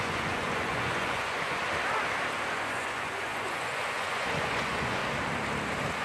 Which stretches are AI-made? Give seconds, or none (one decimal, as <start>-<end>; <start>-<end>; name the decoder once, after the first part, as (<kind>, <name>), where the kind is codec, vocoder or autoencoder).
0.0-1.6 (vocoder, Vocos); 2.5-5.0